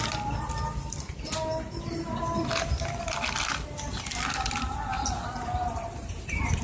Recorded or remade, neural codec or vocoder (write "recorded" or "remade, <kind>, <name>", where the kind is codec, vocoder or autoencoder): recorded